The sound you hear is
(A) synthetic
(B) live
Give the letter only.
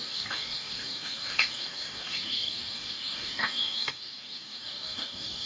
A